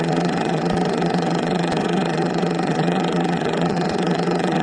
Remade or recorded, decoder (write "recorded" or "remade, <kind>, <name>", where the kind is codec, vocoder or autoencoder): remade, vocoder, Vocos